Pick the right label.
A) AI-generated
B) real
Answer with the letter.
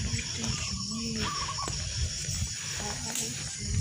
B